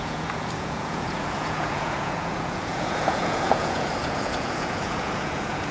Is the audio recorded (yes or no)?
no